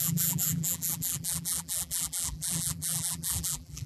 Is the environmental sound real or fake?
fake